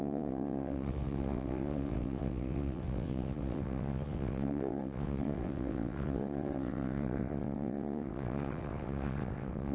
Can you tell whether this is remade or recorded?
remade